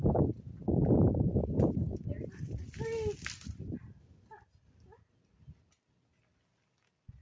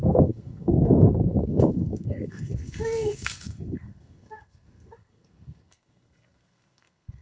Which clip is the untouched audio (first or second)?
first